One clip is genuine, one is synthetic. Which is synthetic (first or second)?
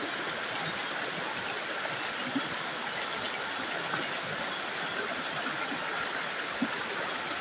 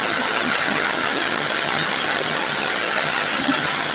second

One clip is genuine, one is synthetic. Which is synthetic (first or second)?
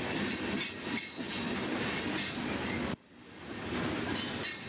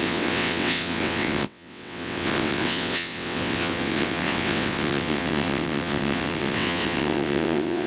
second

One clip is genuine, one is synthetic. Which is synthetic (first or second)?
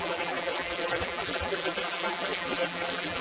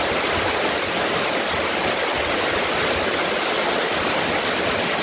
first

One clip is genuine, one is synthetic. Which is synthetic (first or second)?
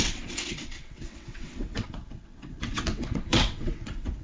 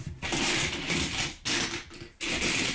first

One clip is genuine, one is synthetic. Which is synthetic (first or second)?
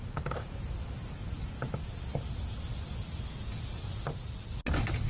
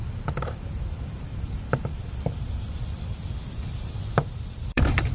second